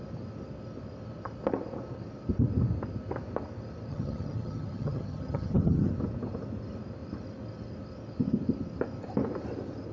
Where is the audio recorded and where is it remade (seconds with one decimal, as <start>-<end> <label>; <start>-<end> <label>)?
0.0-3.9 recorded; 3.9-5.9 remade; 5.9-9.9 recorded